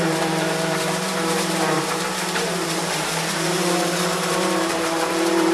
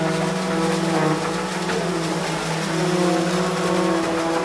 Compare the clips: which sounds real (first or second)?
second